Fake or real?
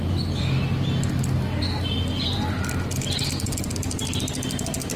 real